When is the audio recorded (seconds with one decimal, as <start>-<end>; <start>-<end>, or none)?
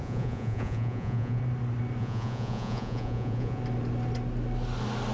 1.4-2.0; 3.6-5.1